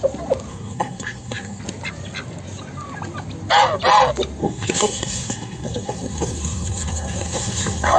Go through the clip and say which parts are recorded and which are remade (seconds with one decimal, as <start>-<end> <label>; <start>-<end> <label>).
0.0-0.5 recorded; 0.5-1.6 remade; 1.6-4.4 recorded; 4.4-8.0 remade